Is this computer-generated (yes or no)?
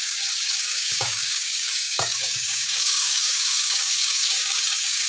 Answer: yes